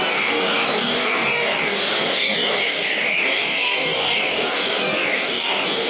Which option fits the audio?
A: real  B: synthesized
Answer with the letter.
B